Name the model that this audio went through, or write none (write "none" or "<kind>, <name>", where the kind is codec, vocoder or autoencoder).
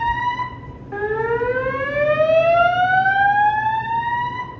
none